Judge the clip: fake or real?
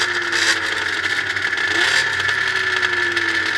real